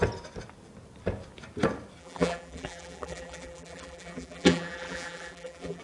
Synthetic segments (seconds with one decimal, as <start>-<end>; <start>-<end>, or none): 2.0-5.8